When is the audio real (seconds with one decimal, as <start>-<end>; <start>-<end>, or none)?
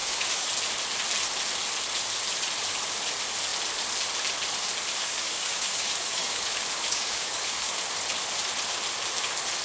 0.5-5.0; 7.8-9.6